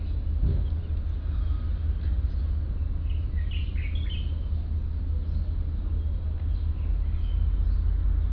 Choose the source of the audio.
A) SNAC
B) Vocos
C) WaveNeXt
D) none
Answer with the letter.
D